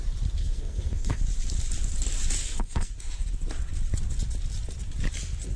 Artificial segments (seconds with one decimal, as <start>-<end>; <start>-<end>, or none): 0.4-1.2; 2.4-2.9